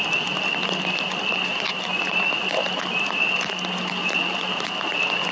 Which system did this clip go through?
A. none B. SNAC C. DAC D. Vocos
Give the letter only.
A